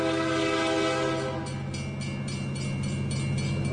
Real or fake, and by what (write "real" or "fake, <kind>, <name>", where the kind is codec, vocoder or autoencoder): real